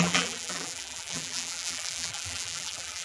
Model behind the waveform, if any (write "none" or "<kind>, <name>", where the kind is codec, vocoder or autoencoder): vocoder, BigVGAN v2